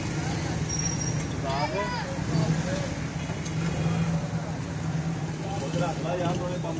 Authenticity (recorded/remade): recorded